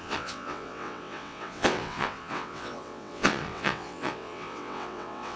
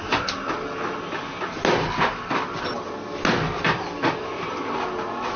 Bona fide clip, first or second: second